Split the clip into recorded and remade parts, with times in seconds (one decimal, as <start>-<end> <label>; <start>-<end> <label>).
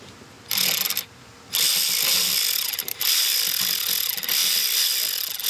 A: 0.0-4.4 remade; 4.4-5.5 recorded